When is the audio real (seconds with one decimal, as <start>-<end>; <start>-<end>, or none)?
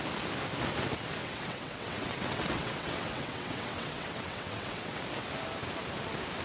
0.0-1.2; 5.0-6.4